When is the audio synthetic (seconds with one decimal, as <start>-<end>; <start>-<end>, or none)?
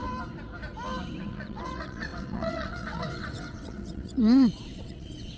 1.2-5.4